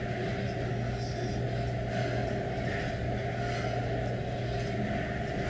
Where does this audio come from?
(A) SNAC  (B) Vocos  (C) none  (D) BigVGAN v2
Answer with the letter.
C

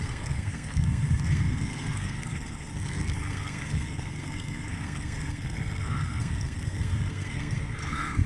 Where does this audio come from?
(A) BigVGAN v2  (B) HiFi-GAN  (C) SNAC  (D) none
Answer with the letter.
C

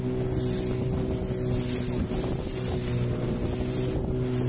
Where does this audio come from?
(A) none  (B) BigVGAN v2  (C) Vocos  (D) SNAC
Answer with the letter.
A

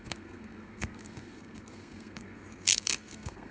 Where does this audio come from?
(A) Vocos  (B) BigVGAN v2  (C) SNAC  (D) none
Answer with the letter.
C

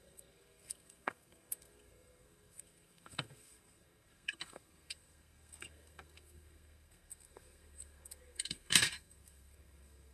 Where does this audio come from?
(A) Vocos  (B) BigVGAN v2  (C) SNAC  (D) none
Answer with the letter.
C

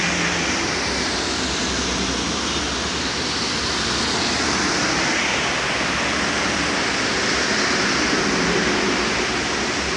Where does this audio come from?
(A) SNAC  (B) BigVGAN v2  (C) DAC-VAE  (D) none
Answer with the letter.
D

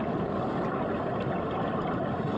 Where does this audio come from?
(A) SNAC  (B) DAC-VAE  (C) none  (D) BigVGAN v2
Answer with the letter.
C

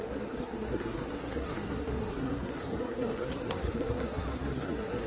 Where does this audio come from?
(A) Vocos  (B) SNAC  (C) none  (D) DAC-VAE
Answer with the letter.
B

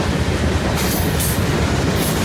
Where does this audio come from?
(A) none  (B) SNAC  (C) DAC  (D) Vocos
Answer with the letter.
A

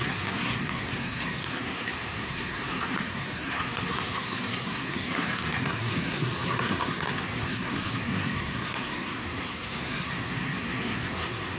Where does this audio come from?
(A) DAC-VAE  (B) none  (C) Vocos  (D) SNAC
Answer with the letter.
D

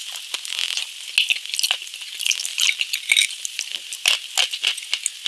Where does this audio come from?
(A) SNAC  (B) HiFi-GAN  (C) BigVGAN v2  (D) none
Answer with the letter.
D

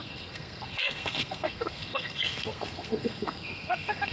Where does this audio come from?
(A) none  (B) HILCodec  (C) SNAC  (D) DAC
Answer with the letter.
C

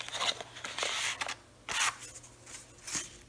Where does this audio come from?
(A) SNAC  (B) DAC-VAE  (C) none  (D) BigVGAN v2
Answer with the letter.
C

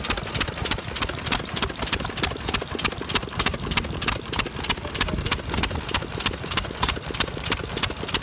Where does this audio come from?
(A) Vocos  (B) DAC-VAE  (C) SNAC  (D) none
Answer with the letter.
D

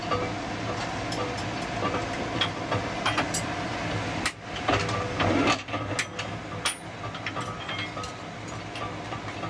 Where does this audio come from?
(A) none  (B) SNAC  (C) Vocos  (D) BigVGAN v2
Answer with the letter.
A